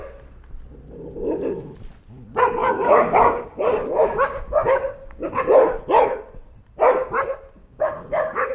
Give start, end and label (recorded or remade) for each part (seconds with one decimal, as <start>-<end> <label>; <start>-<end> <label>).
0.0-2.6 recorded; 2.6-5.4 remade; 5.4-7.6 recorded; 7.6-8.5 remade